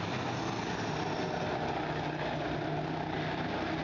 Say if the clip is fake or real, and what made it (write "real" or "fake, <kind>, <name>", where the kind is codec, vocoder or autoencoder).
real